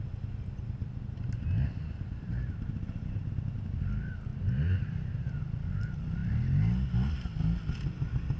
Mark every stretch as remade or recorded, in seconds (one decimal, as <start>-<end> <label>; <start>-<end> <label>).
0.0-0.8 recorded; 0.8-3.3 remade; 3.3-4.3 recorded; 4.3-5.4 remade; 5.4-8.4 recorded